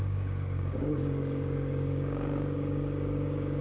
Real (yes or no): no